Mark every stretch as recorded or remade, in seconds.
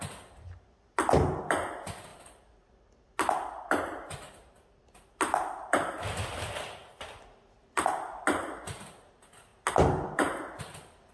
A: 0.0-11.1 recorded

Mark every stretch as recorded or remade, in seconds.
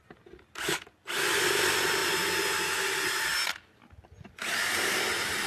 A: 0.0-5.5 recorded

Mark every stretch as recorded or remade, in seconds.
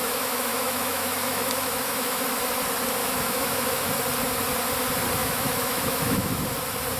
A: 0.0-2.2 remade; 2.2-3.0 recorded; 3.0-3.9 remade; 3.9-5.2 recorded; 5.2-6.4 remade; 6.4-7.0 recorded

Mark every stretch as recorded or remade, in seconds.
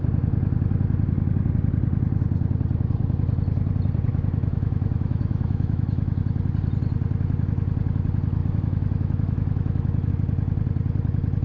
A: 0.0-4.1 recorded; 4.1-6.2 remade; 6.2-8.4 recorded; 8.4-10.1 remade; 10.1-11.4 recorded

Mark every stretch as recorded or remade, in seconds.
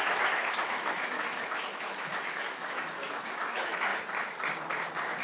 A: 0.0-3.9 remade; 3.9-5.2 recorded